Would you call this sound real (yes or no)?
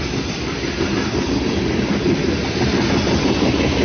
yes